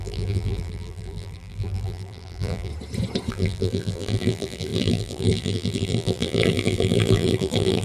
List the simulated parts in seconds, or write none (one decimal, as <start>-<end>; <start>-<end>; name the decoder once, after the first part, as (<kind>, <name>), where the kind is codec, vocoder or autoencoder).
0.0-2.7 (vocoder, BigVGAN v2); 3.3-7.8

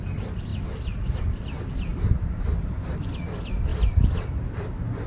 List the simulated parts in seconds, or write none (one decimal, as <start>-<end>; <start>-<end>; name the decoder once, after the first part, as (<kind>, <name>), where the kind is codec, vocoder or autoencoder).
1.9-2.6 (vocoder, BigVGAN v2); 3.7-5.1